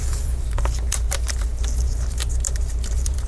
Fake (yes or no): yes